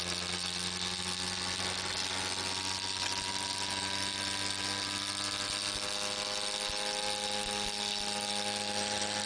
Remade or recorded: recorded